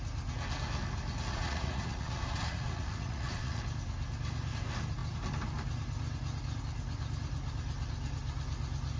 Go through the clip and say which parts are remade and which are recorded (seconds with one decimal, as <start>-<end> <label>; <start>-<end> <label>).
0.0-1.3 recorded; 1.3-3.6 remade; 3.6-9.0 recorded